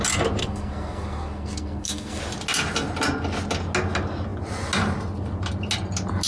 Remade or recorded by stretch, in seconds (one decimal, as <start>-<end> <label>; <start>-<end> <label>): 0.0-0.4 recorded; 0.4-2.2 remade; 2.2-6.3 recorded